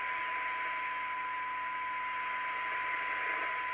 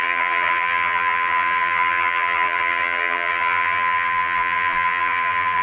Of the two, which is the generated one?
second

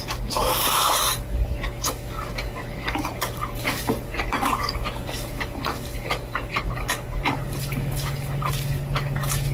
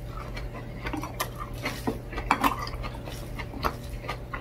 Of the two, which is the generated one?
first